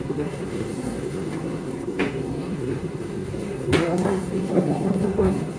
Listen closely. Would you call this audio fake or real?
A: fake